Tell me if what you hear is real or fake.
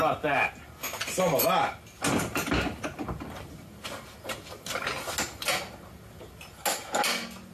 real